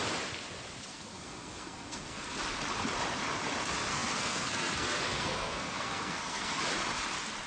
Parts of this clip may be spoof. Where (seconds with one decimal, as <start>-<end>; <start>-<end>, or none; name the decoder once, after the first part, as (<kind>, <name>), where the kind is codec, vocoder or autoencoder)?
0.9-2.4 (codec, SNAC); 3.9-6.6